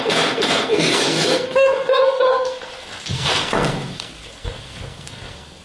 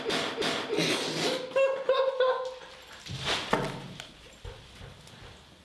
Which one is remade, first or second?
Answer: first